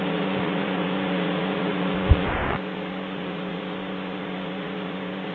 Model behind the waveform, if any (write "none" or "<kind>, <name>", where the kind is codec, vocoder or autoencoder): vocoder, Vocos